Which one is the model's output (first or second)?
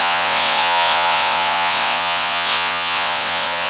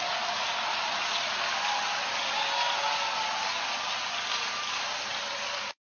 first